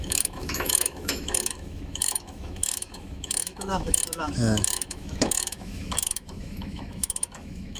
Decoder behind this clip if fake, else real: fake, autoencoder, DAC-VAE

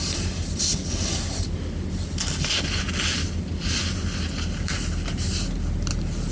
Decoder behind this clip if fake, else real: real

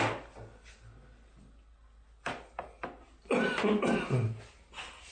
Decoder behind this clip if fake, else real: real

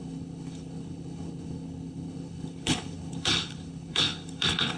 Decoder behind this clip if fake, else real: fake, codec, HILCodec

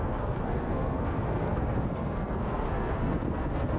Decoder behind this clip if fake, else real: fake, codec, SNAC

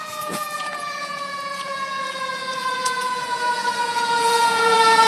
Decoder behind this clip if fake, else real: fake, vocoder, Vocos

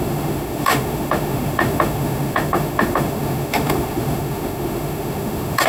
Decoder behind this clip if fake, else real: fake, autoencoder, DAC-VAE